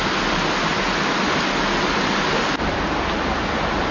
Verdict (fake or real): real